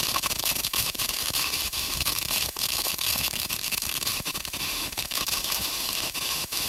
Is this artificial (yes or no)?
yes